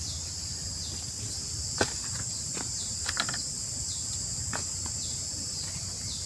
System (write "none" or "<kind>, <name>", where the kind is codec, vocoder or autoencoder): none